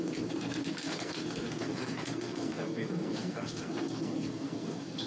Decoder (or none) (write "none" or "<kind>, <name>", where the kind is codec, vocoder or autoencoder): codec, SNAC